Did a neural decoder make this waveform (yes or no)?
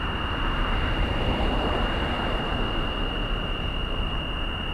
yes